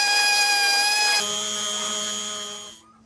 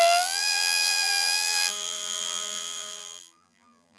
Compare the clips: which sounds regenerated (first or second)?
second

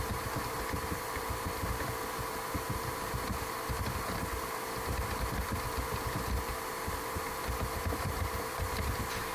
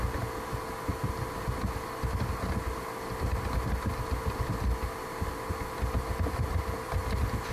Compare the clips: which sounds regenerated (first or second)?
first